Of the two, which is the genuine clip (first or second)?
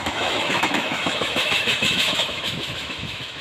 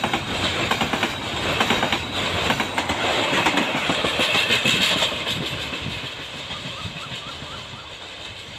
second